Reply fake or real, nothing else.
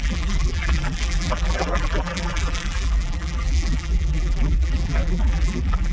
fake